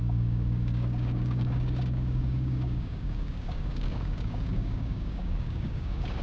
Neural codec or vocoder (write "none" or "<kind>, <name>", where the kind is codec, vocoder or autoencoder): codec, DAC